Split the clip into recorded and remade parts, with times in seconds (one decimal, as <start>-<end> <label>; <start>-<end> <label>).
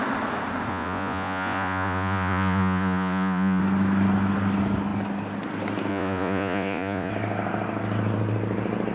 0.0-0.7 recorded; 0.7-3.6 remade; 3.6-5.9 recorded; 5.9-7.1 remade; 7.1-8.9 recorded